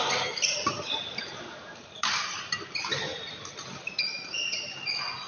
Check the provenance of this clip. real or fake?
real